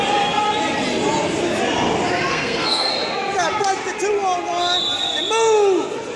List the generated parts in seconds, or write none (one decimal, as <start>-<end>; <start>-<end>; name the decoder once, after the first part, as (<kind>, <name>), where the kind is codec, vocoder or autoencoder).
2.3-2.9 (codec, SNAC)